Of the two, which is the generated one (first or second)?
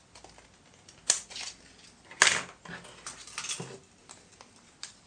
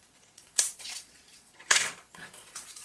second